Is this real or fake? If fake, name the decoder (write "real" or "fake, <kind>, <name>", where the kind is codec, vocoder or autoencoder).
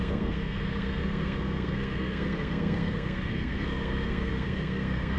fake, codec, SNAC